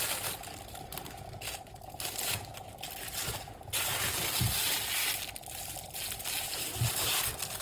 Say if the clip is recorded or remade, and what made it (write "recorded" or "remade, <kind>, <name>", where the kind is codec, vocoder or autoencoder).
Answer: recorded